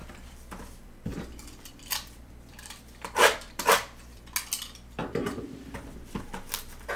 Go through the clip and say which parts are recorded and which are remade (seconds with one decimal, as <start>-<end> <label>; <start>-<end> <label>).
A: 0.0-4.2 remade; 4.2-5.0 recorded; 5.0-6.3 remade; 6.3-7.0 recorded